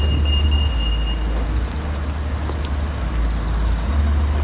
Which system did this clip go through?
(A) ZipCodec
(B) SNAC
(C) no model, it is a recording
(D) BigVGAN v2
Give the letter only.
C